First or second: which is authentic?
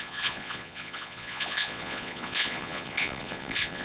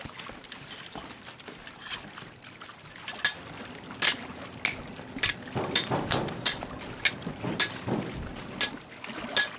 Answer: second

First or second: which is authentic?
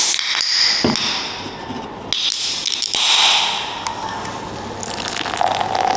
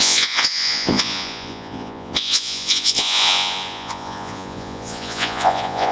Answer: first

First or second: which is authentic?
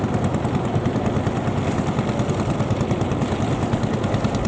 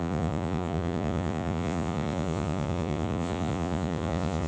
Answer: first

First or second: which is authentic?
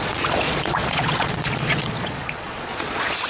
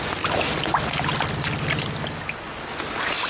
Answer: second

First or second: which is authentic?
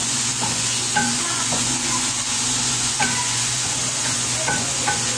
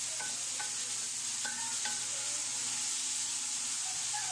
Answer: second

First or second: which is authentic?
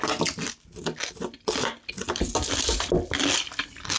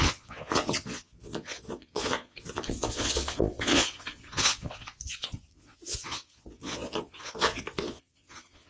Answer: first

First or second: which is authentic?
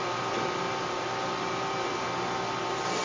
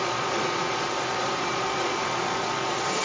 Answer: first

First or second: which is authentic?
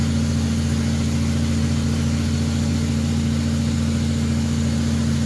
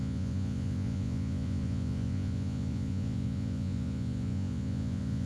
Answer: first